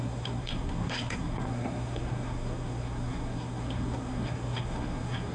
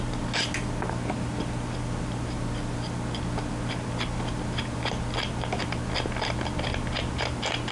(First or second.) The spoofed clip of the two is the first